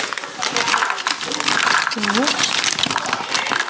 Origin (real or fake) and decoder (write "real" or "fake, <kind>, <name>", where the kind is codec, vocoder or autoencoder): real